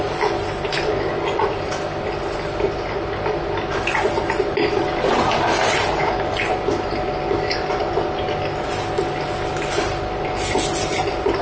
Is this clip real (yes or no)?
yes